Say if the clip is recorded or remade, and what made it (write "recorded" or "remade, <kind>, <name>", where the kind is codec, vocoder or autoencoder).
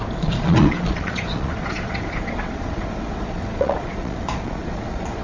remade, vocoder, Vocos